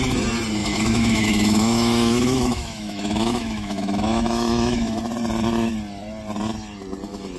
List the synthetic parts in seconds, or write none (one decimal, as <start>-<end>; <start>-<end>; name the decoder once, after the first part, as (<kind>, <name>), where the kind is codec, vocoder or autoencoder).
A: 0.6-5.0 (autoencoder, DAC-VAE)